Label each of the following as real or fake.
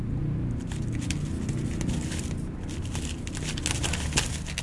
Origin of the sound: real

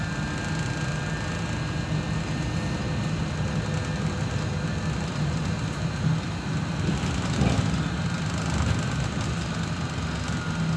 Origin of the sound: real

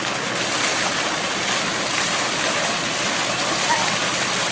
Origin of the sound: real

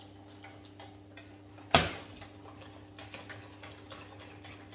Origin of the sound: real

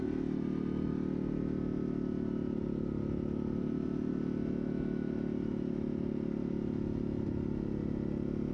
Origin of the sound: real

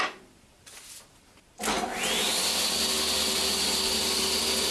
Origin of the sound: real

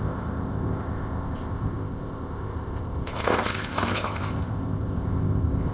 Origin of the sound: fake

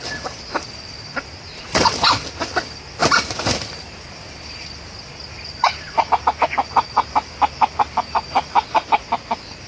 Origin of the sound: real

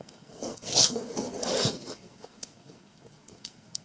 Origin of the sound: fake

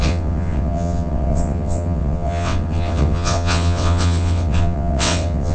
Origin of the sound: fake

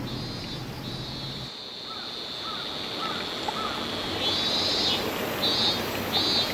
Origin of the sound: real